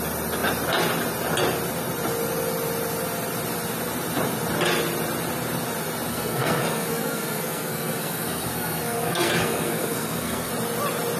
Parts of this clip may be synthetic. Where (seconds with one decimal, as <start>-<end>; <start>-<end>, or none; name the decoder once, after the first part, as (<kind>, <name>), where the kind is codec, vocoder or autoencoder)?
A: 6.1-10.5 (codec, SNAC)